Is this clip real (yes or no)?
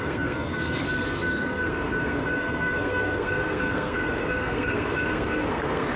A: no